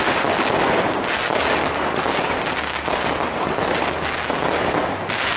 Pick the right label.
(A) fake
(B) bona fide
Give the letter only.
B